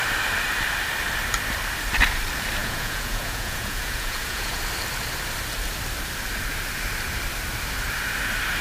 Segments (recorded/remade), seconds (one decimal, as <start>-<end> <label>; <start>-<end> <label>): 0.0-2.6 recorded; 2.6-4.6 remade; 4.6-8.6 recorded